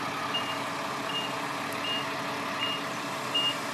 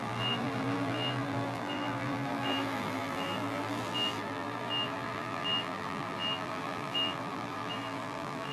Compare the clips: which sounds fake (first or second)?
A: second